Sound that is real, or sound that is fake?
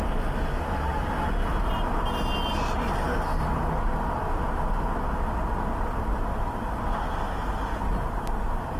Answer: real